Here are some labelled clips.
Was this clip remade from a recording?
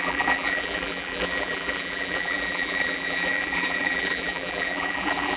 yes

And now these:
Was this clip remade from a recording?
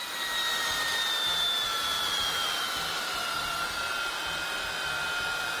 no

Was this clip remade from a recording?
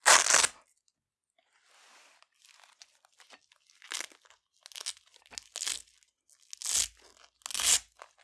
no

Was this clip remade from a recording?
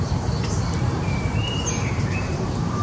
yes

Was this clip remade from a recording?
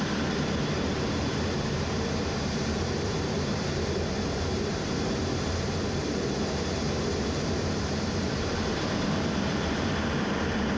yes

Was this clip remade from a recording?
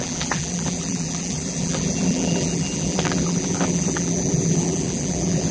yes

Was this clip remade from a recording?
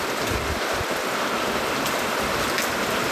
no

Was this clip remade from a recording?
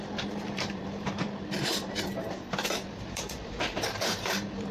yes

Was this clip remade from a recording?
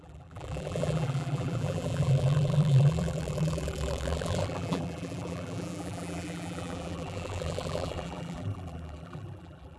yes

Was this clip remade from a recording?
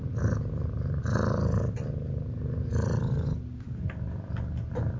yes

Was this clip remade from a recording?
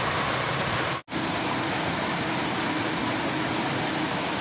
no